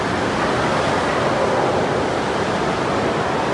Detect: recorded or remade recorded